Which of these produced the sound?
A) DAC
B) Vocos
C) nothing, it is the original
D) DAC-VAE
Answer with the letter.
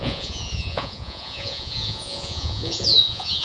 B